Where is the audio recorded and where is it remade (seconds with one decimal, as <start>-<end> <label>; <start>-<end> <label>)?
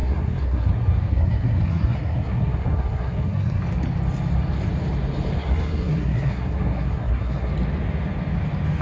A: 0.0-0.7 remade; 0.7-1.1 recorded; 1.1-3.6 remade; 3.6-5.4 recorded; 5.4-7.5 remade; 7.5-8.8 recorded